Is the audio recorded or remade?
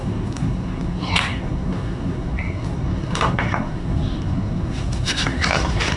remade